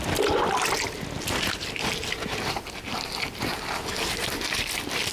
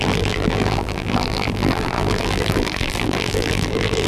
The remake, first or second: second